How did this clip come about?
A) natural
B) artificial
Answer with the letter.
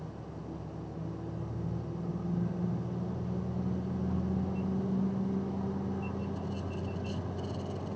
A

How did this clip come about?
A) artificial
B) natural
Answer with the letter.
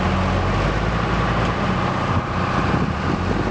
B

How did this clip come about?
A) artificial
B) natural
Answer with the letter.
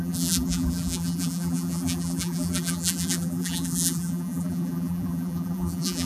A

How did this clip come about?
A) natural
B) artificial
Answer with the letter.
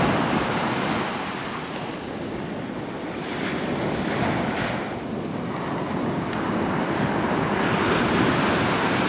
A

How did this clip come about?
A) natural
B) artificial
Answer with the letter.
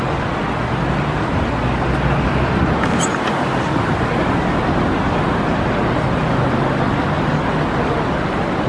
A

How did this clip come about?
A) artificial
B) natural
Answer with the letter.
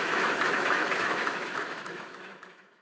A